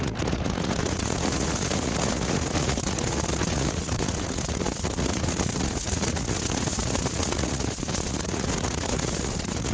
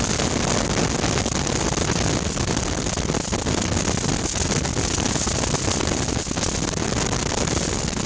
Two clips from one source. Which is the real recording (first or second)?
second